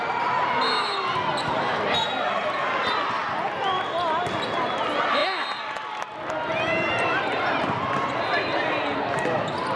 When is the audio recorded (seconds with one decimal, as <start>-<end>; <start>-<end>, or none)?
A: 0.0-9.8